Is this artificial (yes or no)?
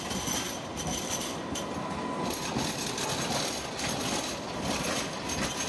no